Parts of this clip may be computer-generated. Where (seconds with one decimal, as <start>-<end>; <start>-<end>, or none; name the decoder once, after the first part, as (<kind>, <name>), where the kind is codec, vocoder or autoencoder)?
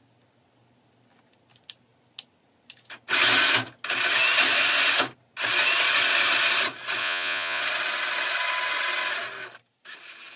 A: 7.0-7.6 (vocoder, Vocos)